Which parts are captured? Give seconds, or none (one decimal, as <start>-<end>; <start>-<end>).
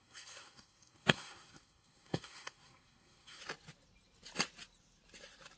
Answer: 3.4-5.6